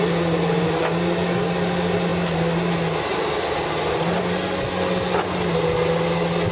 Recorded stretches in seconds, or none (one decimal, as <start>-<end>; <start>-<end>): 0.0-6.5